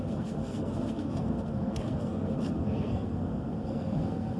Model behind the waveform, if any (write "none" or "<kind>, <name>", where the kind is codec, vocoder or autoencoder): codec, SNAC